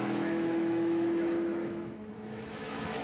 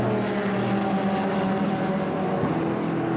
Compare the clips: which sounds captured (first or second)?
second